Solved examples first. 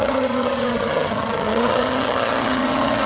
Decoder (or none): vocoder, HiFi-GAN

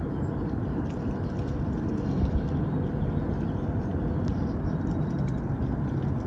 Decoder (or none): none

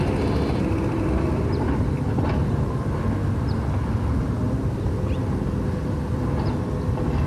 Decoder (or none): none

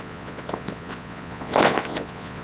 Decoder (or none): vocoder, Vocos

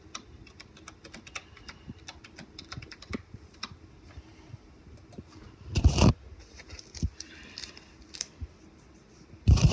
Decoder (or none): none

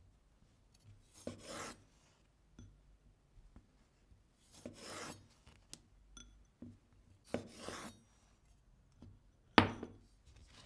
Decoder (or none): none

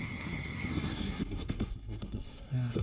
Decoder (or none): codec, SNAC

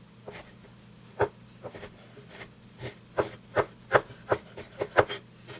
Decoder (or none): none